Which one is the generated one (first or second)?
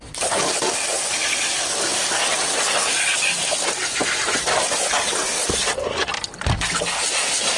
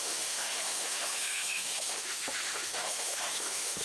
second